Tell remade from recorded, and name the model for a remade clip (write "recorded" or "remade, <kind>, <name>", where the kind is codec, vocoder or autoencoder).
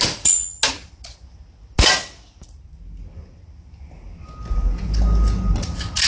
recorded